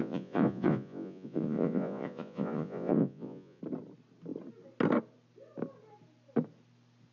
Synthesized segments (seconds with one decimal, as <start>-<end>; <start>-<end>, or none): 0.0-3.6